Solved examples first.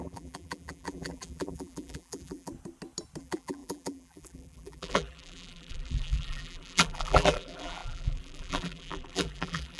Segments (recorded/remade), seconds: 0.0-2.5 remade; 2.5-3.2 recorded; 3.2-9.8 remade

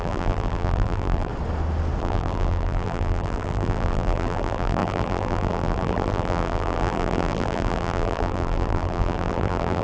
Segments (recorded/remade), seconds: 0.0-1.3 remade; 1.3-2.0 recorded; 2.0-9.8 remade

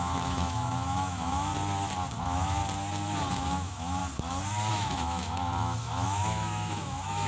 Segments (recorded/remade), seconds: 0.0-1.5 remade; 1.5-2.2 recorded; 2.2-2.6 remade; 2.6-3.3 recorded; 3.3-4.0 remade; 4.0-4.7 recorded; 4.7-7.3 remade